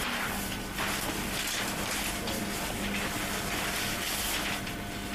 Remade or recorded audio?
recorded